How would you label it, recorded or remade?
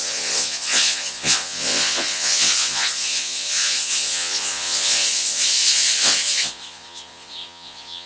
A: remade